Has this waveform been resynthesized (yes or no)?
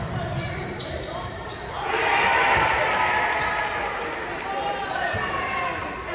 no